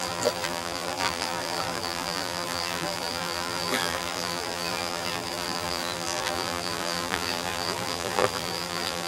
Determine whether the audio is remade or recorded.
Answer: remade